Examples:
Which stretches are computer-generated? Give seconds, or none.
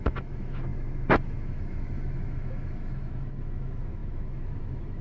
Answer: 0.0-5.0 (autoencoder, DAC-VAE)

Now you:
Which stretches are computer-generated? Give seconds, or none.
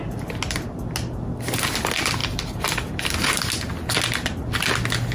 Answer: 2.2-3.2 (vocoder, BigVGAN v2)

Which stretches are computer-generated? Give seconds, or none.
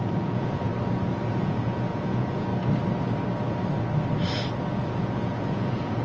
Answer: 0.0-0.7 (vocoder, Vocos); 1.3-2.5; 4.7-6.0